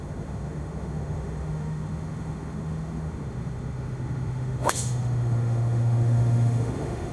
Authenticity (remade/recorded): remade